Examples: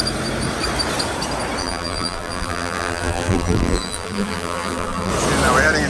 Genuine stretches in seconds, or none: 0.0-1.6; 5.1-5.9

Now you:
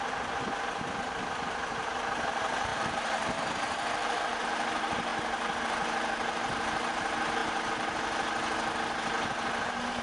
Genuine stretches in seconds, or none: 7.4-10.0

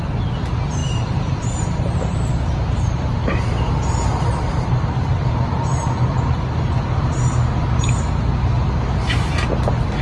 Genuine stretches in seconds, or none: 0.0-0.8; 4.5-10.0

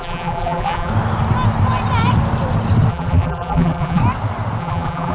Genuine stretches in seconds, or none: 0.9-2.9; 4.0-4.6